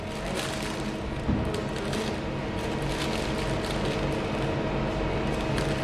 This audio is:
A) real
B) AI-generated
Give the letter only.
A